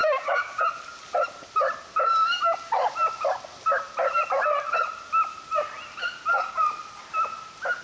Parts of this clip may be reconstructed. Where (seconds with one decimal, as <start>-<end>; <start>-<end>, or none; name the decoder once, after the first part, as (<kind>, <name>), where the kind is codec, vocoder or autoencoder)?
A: 0.0-0.6 (codec, DAC)